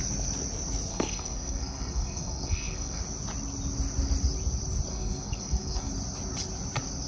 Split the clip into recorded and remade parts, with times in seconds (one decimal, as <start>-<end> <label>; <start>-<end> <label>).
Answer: 0.0-0.9 recorded; 0.9-3.0 remade; 3.0-4.9 recorded; 4.9-5.9 remade; 5.9-7.1 recorded